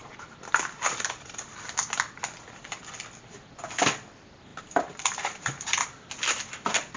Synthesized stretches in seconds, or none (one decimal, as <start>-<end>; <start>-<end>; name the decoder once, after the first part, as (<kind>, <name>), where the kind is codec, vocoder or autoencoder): 4.5-6.1 (vocoder, BigVGAN v2)

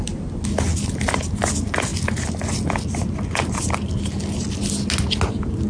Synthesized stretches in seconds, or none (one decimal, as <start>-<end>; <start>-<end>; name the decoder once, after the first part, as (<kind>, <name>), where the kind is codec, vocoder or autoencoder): none

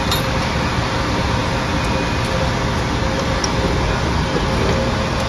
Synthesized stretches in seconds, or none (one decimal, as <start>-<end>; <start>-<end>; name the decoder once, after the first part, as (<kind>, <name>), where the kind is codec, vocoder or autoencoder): none

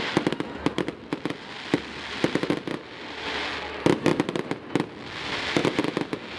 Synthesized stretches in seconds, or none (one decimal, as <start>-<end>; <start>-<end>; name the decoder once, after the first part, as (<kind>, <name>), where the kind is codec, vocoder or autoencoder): none

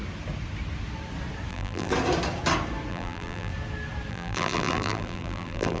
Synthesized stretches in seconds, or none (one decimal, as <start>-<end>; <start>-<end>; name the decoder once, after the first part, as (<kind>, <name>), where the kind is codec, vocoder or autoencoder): 1.5-1.9 (vocoder, BigVGAN v2); 2.9-3.5; 4.1-5.8

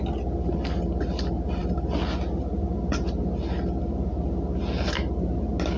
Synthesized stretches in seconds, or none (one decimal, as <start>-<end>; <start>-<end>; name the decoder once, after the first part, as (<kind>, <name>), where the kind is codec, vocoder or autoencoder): none